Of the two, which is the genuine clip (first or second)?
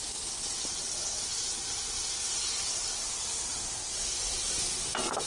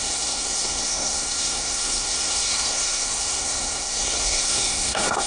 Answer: first